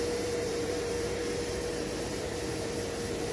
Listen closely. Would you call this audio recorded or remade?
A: remade